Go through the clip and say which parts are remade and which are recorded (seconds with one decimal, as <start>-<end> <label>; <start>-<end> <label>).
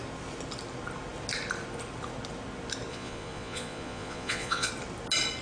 0.0-2.9 recorded; 2.9-4.7 remade; 4.7-5.4 recorded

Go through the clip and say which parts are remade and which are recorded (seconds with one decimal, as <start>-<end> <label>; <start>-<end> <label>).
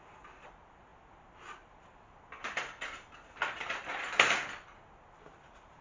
0.0-5.8 recorded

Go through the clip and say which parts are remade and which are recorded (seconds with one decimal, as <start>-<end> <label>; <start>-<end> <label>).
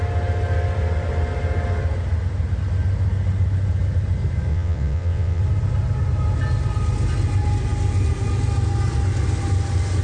0.0-4.5 recorded; 4.5-5.4 remade; 5.4-10.0 recorded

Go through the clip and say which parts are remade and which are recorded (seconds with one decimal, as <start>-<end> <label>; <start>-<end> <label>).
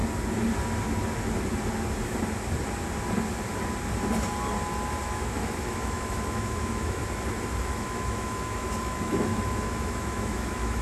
0.0-5.0 recorded; 5.0-7.0 remade; 7.0-7.6 recorded; 7.6-10.8 remade